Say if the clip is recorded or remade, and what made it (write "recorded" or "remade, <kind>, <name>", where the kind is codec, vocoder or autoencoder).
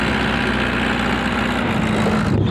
recorded